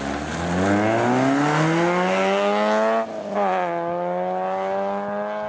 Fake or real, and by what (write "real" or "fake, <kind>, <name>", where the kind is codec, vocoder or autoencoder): real